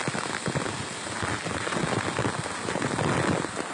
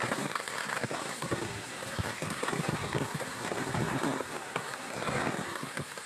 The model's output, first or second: second